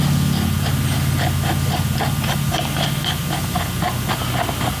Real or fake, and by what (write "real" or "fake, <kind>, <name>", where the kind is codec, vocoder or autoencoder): real